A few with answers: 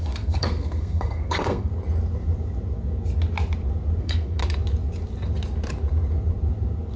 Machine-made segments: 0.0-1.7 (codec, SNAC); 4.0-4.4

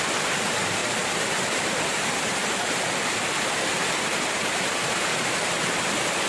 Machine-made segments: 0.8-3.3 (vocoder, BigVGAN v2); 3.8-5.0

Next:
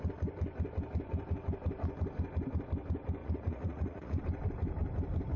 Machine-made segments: 3.2-4.2 (vocoder, Vocos)

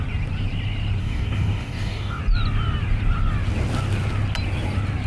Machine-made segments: 1.0-2.2 (codec, DAC)